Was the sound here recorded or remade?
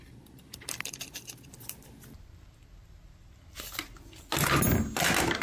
recorded